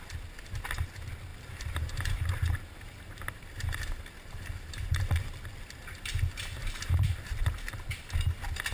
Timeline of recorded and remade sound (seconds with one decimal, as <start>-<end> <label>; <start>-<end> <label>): 0.0-1.3 recorded; 1.3-5.4 remade; 5.4-6.6 recorded; 6.6-7.2 remade; 7.2-8.7 recorded